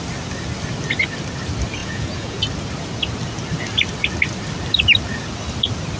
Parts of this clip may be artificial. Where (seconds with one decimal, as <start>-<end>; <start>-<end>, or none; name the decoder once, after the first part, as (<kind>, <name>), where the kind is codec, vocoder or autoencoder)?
1.8-2.4 (vocoder, Vocos)